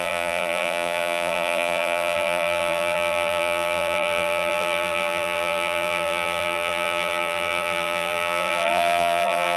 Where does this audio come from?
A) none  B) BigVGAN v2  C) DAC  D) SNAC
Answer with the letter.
B